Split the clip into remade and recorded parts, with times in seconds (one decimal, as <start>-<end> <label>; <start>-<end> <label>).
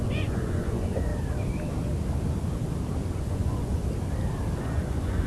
0.0-1.1 remade; 1.1-3.2 recorded; 3.2-3.8 remade; 3.8-4.6 recorded; 4.6-5.3 remade